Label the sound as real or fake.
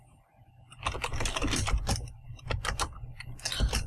real